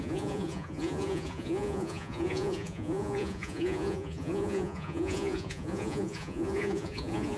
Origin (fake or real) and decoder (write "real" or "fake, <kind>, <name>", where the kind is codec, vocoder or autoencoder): fake, vocoder, Vocos